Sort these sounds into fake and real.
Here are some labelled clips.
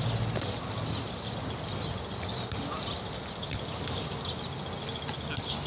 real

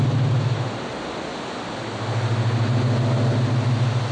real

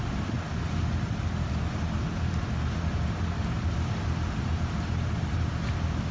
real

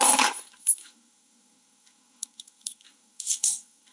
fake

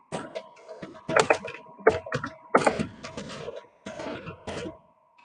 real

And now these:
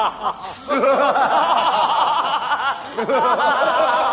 real